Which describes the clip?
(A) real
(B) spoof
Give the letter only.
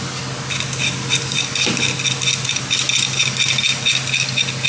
A